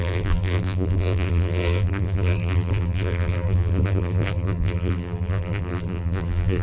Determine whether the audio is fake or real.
fake